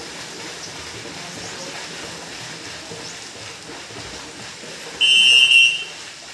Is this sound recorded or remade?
recorded